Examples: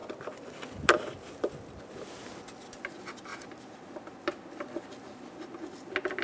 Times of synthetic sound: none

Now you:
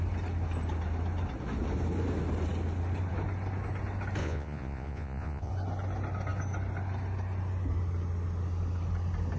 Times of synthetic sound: 4.2-5.5 (vocoder, Vocos)

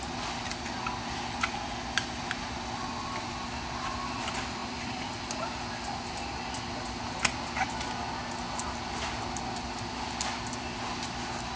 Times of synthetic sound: none

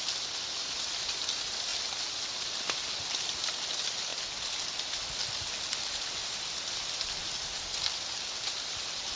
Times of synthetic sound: none

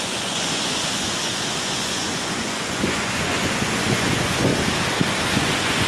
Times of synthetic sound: 0.0-4.5 (vocoder, Vocos); 5.3-5.9

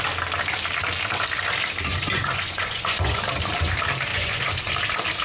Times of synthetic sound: 1.9-3.2 (vocoder, Vocos); 4.1-4.7

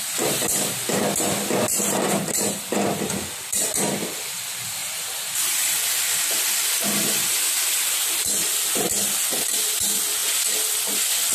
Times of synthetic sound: none

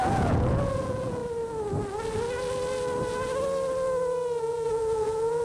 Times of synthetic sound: 0.0-1.2 (vocoder, Vocos); 4.4-5.4